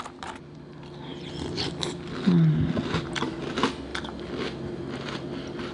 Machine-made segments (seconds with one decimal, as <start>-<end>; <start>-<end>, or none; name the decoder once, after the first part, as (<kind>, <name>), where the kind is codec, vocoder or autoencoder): 0.0-1.1 (vocoder, BigVGAN v2); 3.0-3.9; 4.7-5.7